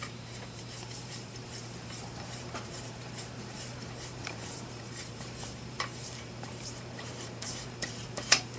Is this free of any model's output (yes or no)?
no